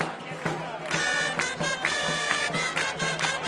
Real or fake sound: real